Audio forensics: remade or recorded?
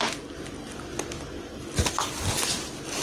recorded